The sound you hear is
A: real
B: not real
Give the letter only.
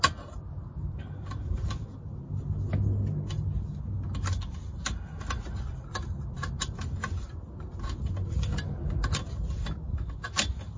A